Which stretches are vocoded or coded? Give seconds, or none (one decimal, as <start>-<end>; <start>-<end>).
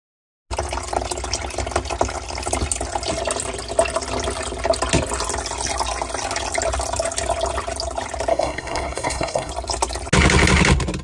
8.3-9.5